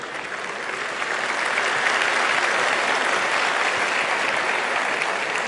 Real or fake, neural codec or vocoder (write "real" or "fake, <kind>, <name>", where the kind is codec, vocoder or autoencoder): real